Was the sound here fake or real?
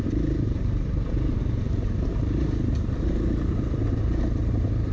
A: fake